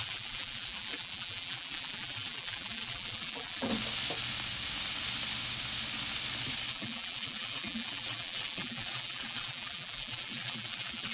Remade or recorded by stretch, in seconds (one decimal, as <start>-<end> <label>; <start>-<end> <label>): 0.0-3.7 remade; 3.7-6.7 recorded; 6.7-11.1 remade